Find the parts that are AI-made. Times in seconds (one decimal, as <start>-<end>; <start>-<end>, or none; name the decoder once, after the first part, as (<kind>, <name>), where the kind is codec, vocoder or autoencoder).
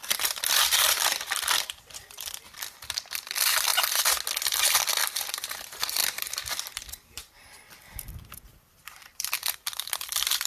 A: 0.0-3.7 (vocoder, BigVGAN v2); 5.2-10.5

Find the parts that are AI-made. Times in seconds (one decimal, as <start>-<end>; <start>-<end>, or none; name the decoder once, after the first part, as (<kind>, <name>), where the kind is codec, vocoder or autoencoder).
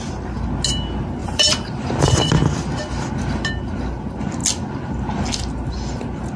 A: 1.2-2.1 (vocoder, BigVGAN v2)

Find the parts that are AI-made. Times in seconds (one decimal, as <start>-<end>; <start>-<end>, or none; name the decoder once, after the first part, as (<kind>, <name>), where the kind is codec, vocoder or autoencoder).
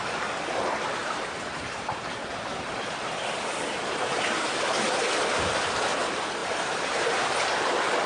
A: 1.0-5.0 (vocoder, BigVGAN v2); 6.4-7.4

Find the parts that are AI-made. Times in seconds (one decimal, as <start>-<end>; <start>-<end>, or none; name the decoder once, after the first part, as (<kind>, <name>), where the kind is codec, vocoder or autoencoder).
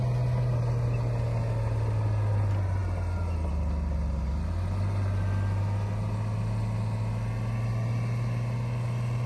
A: none